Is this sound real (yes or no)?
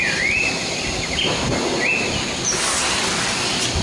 yes